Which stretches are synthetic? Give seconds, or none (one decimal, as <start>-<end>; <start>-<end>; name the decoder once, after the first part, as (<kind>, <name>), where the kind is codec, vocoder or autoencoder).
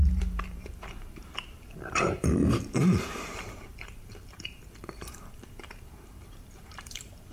0.0-7.3 (vocoder, BigVGAN v2)